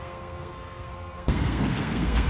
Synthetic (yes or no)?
yes